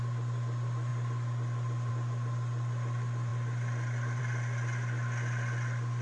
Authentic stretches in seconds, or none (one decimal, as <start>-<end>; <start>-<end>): 0.0-6.0